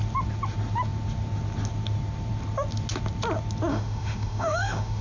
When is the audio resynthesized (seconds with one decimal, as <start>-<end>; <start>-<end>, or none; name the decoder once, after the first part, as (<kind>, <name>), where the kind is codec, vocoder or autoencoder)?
3.7-5.0 (autoencoder, DAC-VAE)